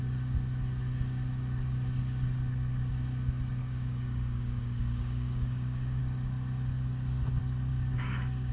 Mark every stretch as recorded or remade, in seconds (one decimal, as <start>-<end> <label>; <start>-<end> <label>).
0.0-3.6 recorded; 3.6-6.0 remade; 6.0-7.7 recorded; 7.7-8.5 remade